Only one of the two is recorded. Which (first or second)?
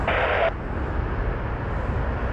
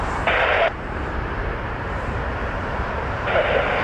first